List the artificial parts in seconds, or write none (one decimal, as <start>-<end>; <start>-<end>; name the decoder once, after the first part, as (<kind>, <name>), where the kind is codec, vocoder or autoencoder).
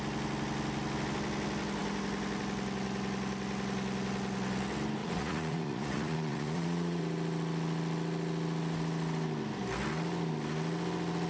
5.0-7.0 (vocoder, Vocos)